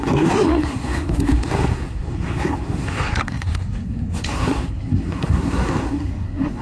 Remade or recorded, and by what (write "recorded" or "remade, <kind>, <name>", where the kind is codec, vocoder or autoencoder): remade, codec, SNAC